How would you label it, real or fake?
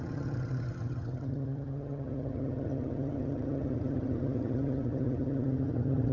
fake